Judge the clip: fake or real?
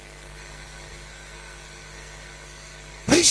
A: fake